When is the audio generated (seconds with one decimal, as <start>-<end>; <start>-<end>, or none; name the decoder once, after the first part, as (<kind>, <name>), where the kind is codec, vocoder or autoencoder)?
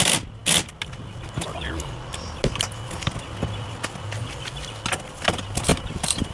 5.7-6.3 (vocoder, BigVGAN v2)